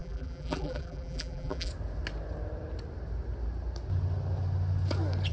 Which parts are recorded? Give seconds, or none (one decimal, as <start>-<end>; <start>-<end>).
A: 1.7-5.3